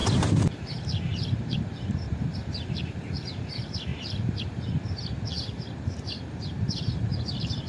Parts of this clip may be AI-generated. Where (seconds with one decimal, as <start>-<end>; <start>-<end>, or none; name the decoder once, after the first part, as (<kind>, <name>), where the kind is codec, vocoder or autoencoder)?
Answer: 0.0-3.9 (vocoder, BigVGAN v2); 5.3-7.7